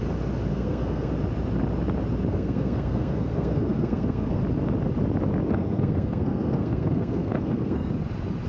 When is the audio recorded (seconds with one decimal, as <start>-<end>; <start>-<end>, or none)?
0.0-0.5; 1.1-2.3; 4.4-5.5; 7.9-8.5